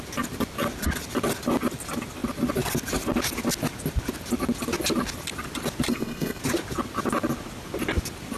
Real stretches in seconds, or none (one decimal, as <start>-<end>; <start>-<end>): 0.0-5.9; 6.4-8.4